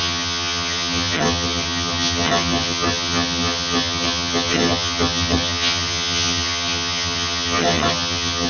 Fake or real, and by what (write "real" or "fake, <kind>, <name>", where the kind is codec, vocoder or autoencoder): fake, vocoder, HiFi-GAN